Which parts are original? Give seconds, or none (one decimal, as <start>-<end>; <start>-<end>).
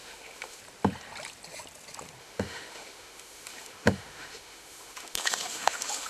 0.6-2.2